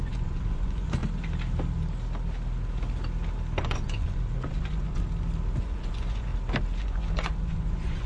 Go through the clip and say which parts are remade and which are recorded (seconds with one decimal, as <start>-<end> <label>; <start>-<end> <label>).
0.0-1.0 remade; 1.0-3.6 recorded; 3.6-5.0 remade; 5.0-5.6 recorded; 5.6-6.3 remade; 6.3-6.8 recorded; 6.8-8.1 remade